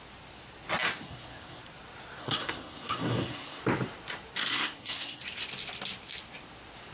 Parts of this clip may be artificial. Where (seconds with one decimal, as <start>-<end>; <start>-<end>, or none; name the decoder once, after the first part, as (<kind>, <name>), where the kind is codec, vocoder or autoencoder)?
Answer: 1.0-1.6 (codec, SNAC); 2.2-3.6; 4.5-5.2